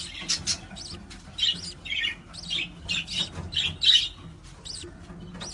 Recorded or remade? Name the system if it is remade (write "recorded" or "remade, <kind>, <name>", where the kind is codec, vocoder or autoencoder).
recorded